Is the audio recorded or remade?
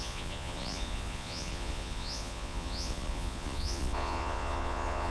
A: remade